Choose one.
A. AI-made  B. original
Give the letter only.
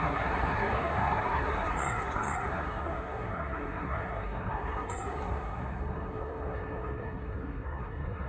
A